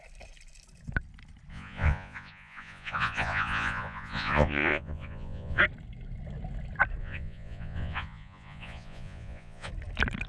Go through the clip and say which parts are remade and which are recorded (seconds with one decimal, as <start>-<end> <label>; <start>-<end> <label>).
0.0-1.5 recorded; 1.5-5.6 remade; 5.6-7.0 recorded; 7.0-9.7 remade; 9.7-10.3 recorded